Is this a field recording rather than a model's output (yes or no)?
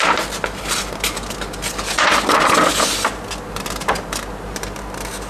yes